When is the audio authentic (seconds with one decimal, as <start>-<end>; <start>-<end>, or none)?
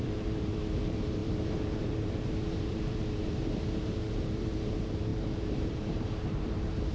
none